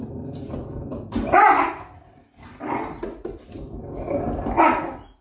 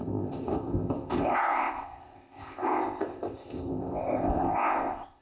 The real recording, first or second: first